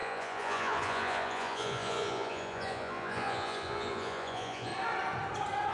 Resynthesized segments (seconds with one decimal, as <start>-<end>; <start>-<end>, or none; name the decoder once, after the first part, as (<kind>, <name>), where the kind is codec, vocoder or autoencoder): 0.0-4.7 (vocoder, Vocos)